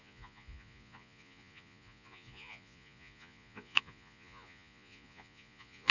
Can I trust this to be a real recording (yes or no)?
no